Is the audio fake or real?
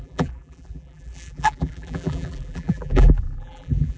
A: fake